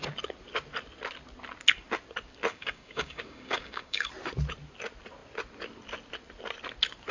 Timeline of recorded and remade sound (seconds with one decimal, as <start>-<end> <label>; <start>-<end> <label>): 0.0-2.5 recorded; 2.5-4.1 remade; 4.1-7.1 recorded